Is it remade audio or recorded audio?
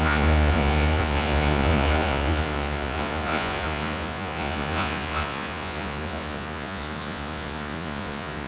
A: remade